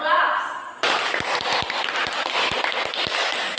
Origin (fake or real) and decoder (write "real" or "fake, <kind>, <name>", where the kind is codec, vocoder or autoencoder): real